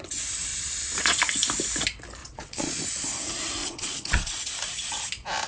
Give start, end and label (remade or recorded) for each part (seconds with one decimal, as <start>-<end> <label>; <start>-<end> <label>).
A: 0.0-0.5 recorded; 0.5-1.2 remade; 1.2-2.2 recorded; 2.2-2.8 remade; 2.8-3.6 recorded; 3.6-4.5 remade; 4.5-5.5 recorded